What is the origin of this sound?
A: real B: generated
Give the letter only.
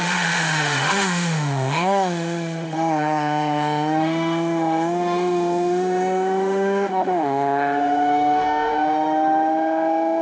B